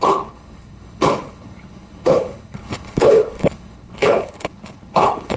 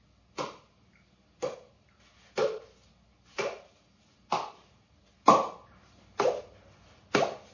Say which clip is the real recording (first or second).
second